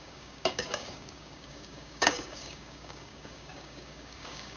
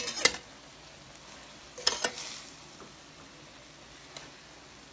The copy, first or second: first